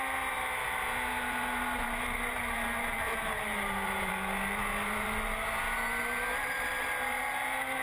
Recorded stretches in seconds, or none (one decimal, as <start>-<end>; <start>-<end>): 0.0-0.6; 4.1-4.7; 5.3-6.3; 7.2-7.8